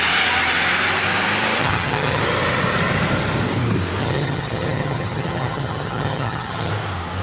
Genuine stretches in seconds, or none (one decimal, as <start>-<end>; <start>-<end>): 0.0-1.6; 2.2-4.0; 6.7-7.2